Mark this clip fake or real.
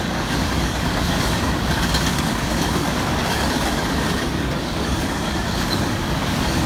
fake